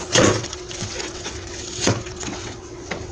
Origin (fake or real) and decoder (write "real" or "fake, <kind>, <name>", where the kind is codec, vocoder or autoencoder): fake, vocoder, WaveNeXt